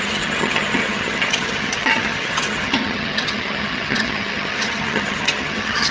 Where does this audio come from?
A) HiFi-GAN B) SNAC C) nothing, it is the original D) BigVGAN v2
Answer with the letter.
A